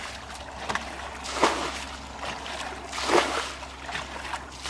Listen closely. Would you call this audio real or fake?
real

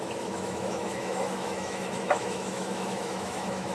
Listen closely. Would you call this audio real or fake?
fake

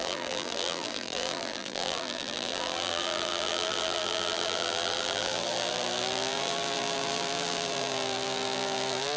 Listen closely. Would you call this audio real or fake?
fake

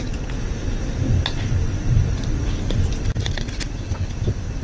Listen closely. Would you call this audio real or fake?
real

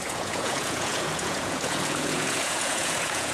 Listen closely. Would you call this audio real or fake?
fake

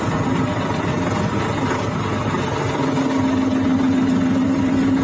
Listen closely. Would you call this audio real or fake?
real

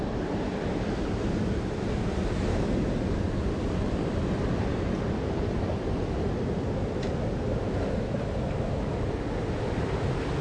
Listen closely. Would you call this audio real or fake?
real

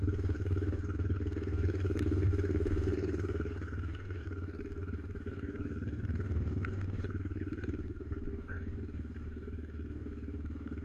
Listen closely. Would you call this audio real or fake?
fake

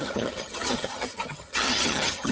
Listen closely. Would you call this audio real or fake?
fake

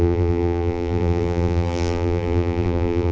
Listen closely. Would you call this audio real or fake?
fake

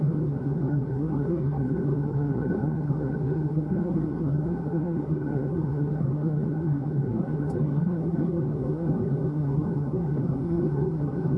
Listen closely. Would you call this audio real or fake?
fake